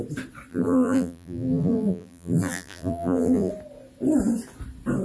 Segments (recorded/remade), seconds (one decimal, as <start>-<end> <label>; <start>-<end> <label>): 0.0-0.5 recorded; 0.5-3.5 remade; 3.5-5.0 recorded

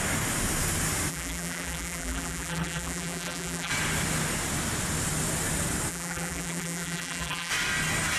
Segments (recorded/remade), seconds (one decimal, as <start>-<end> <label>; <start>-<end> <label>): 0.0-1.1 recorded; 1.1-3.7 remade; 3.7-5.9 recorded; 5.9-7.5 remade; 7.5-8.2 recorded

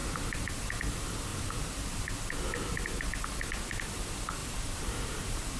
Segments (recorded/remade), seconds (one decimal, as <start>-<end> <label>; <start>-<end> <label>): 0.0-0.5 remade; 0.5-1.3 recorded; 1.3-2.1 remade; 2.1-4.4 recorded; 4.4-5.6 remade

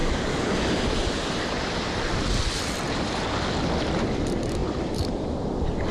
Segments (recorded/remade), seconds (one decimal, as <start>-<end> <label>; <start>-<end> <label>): 0.0-0.5 remade; 0.5-4.6 recorded; 4.6-5.5 remade; 5.5-5.9 recorded

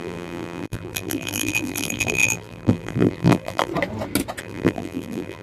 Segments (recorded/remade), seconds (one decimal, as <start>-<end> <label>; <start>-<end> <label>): 0.0-3.7 remade; 3.7-4.4 recorded; 4.4-5.4 remade